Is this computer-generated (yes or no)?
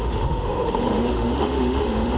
yes